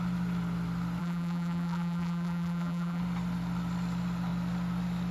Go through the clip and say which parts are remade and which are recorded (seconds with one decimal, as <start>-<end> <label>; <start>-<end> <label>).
0.0-1.0 recorded; 1.0-3.0 remade; 3.0-5.1 recorded